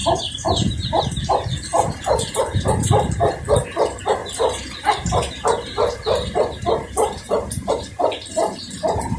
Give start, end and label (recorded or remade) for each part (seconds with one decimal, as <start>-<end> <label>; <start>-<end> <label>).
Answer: 0.0-1.0 remade; 1.0-1.7 recorded; 1.7-2.9 remade; 2.9-4.2 recorded; 4.2-7.7 remade; 7.7-9.2 recorded